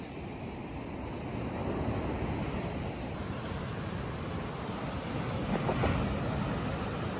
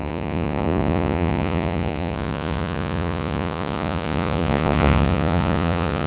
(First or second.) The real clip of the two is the first